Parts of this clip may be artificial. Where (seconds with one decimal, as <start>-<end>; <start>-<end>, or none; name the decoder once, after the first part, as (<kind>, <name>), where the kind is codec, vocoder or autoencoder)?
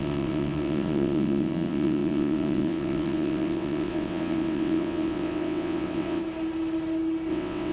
0.0-6.2 (vocoder, WaveNeXt); 7.3-7.7